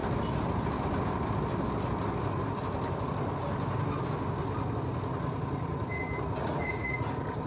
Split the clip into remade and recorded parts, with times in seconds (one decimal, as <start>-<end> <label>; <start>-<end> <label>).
0.0-6.4 recorded; 6.4-7.1 remade; 7.1-7.5 recorded